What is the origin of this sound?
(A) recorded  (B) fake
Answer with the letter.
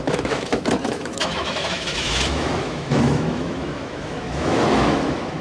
B